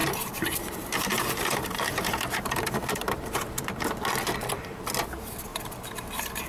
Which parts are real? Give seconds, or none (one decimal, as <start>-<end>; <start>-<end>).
3.9-5.5